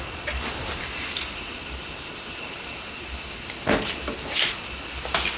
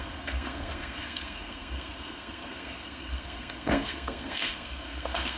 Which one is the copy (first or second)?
second